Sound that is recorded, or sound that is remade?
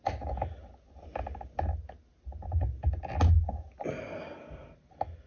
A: recorded